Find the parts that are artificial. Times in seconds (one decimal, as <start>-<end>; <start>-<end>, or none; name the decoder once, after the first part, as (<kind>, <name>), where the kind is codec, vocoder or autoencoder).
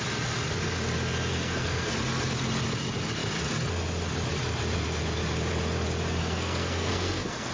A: 1.3-1.9 (codec, SNAC); 6.2-7.5